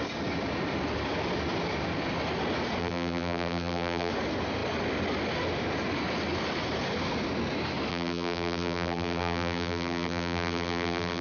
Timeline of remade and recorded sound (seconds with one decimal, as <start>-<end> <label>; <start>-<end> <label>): 0.0-2.8 recorded; 2.8-4.1 remade; 4.1-7.9 recorded; 7.9-11.2 remade